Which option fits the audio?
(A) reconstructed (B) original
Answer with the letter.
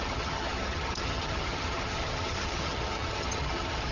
A